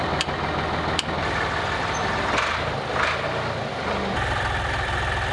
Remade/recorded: remade